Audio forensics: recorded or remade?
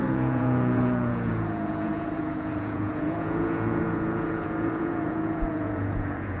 remade